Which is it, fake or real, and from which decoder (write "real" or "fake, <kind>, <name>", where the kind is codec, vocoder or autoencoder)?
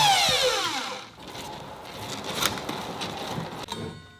real